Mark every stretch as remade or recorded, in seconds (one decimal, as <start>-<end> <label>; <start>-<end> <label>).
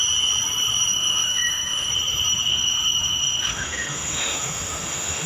0.0-0.9 recorded; 0.9-1.9 remade; 1.9-2.5 recorded; 2.5-5.3 remade